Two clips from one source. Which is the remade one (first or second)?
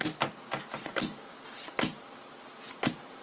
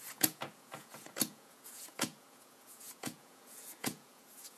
second